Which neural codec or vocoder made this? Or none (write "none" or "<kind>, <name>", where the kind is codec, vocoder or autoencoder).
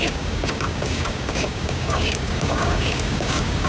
codec, DAC